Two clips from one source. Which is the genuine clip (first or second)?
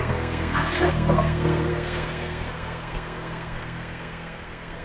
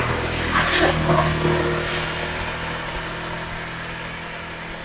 second